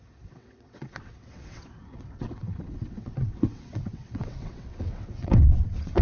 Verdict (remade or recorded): remade